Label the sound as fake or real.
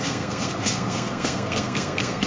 fake